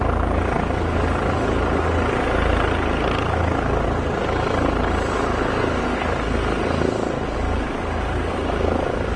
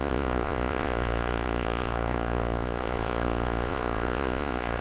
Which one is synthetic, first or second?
second